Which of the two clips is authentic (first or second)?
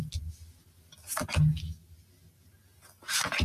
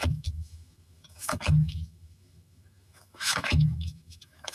first